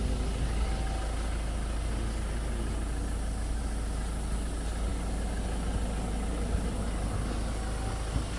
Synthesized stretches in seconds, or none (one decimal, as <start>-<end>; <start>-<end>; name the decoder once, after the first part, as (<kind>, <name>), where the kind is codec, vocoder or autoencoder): none